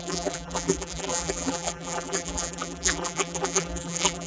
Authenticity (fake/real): fake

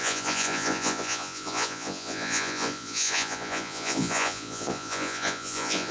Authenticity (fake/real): fake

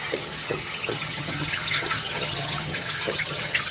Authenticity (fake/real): fake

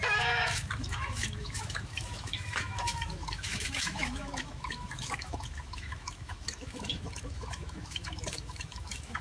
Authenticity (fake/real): fake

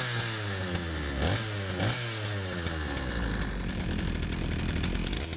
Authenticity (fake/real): real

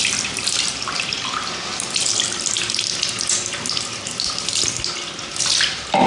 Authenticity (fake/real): real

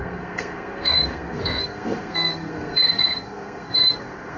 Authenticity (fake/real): fake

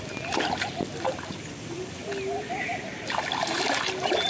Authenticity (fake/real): real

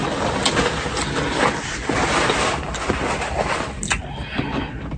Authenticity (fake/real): real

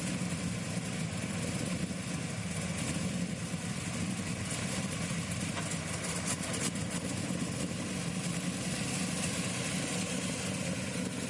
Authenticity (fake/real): real